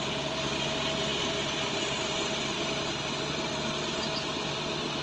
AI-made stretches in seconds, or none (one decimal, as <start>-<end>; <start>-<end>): none